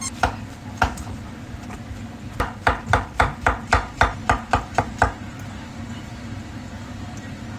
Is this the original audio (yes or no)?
yes